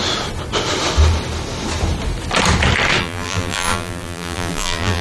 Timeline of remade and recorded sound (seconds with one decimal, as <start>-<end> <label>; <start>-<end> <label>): 0.0-3.0 recorded; 3.0-5.0 remade